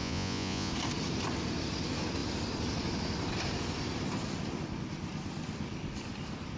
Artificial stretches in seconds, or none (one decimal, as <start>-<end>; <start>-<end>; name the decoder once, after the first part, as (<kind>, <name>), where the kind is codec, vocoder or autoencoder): 0.0-0.7 (vocoder, Vocos)